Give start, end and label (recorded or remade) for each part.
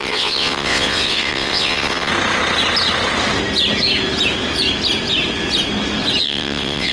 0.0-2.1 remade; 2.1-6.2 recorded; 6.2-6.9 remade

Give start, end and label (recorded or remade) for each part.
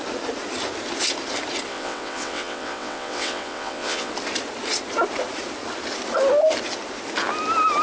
0.0-1.7 recorded; 1.7-4.1 remade; 4.1-7.8 recorded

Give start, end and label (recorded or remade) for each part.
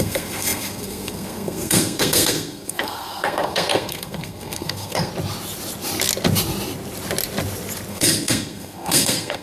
0.0-5.1 remade; 5.1-7.9 recorded; 7.9-9.4 remade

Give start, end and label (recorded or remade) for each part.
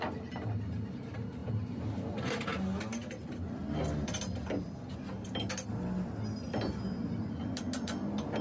0.0-8.4 recorded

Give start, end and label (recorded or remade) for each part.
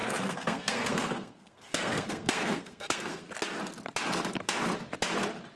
0.0-3.3 remade; 3.3-5.6 recorded